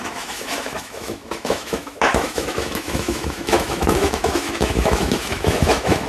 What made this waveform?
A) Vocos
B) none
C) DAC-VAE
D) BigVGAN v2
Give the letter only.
C